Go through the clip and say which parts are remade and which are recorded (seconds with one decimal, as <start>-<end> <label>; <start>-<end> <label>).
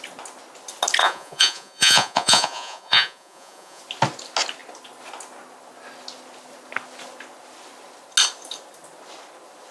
0.0-1.0 recorded; 1.0-3.8 remade; 3.8-9.7 recorded